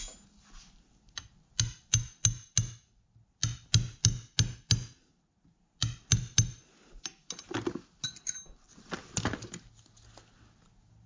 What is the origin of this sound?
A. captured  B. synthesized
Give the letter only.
A